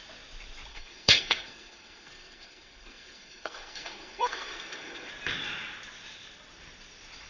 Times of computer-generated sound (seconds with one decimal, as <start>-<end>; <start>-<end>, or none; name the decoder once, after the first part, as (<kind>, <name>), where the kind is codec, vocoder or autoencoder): 0.7-5.1 (codec, SNAC)